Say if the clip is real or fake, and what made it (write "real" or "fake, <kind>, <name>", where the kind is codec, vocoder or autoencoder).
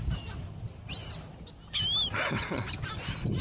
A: real